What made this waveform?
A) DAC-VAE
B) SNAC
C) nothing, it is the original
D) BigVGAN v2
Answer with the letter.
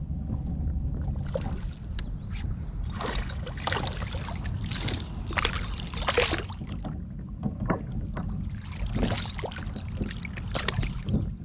C